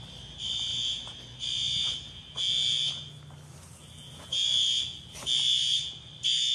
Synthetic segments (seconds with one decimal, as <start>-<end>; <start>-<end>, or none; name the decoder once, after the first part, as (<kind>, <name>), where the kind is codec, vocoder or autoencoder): none